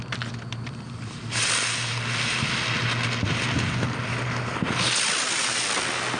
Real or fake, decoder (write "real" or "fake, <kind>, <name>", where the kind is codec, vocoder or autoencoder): real